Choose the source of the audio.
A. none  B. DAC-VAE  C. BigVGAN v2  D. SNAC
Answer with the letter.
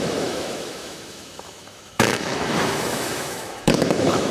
B